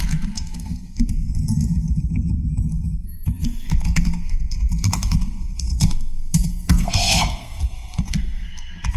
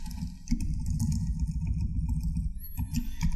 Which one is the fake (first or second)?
first